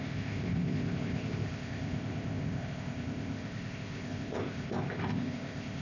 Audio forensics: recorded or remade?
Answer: remade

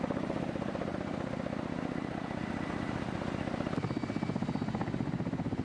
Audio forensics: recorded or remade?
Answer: remade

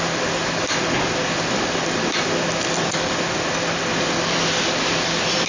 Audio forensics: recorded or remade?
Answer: recorded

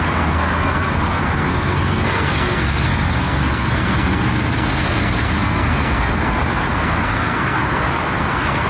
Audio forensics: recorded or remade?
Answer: remade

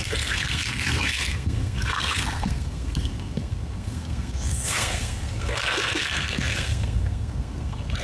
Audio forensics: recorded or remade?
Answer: remade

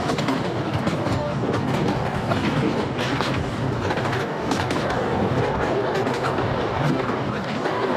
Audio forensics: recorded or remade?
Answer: remade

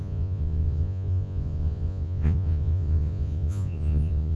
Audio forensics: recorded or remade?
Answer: remade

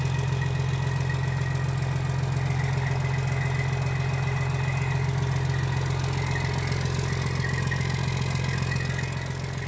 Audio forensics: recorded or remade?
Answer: recorded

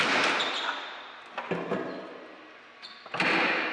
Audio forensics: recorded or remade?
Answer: recorded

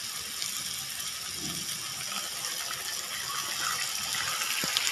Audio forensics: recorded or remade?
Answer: recorded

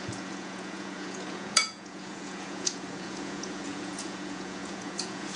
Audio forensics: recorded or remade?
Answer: remade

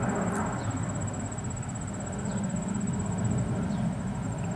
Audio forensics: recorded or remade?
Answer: recorded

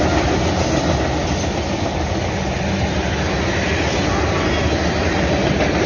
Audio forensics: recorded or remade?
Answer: recorded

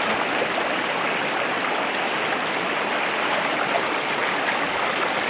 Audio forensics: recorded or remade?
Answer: recorded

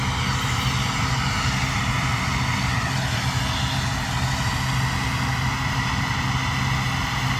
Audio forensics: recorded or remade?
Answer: recorded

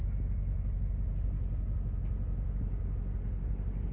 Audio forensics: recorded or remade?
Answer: recorded